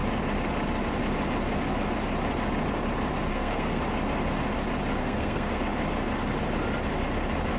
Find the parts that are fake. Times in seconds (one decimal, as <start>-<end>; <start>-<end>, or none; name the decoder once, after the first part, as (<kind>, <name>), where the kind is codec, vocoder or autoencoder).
3.3-3.8 (codec, SNAC); 5.0-5.6